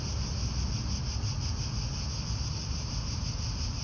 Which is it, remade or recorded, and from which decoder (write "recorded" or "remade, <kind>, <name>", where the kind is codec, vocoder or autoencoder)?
recorded